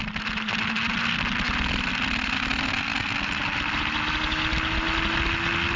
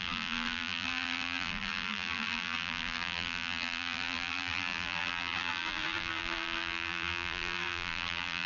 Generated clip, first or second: second